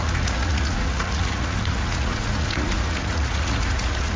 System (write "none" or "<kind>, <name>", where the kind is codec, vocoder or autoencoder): vocoder, Vocos